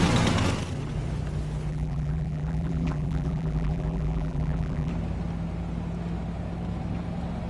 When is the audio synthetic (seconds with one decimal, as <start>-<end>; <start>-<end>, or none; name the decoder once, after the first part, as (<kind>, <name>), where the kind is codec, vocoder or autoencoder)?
1.7-4.9 (vocoder, BigVGAN v2)